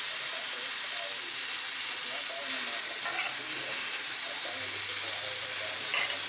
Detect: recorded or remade recorded